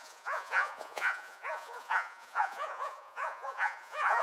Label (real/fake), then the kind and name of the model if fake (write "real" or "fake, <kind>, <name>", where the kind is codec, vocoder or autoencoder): fake, vocoder, Vocos